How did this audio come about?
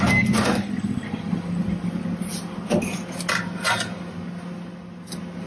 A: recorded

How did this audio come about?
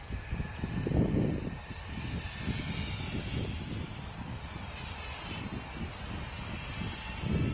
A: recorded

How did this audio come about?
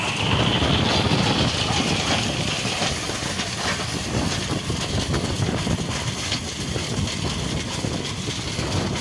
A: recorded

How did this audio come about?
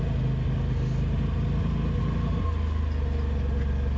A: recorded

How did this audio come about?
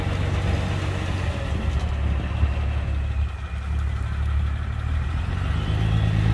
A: recorded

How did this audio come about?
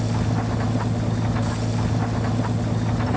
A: recorded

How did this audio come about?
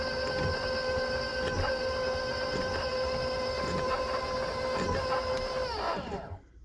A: recorded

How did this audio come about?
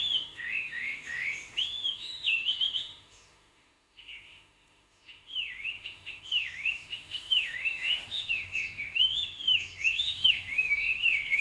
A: remade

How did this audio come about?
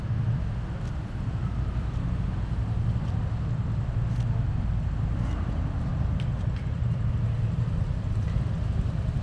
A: recorded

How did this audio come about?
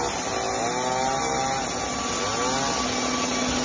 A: recorded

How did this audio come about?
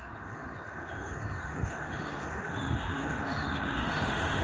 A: remade